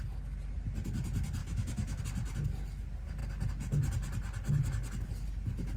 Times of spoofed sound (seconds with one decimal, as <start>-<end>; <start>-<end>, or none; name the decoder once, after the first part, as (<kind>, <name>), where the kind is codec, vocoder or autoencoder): 1.4-2.0 (autoencoder, DAC-VAE)